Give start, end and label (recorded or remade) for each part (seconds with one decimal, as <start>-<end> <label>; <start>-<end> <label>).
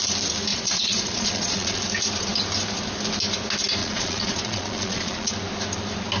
0.0-0.5 recorded; 0.5-1.8 remade; 1.8-3.8 recorded; 3.8-5.3 remade; 5.3-6.2 recorded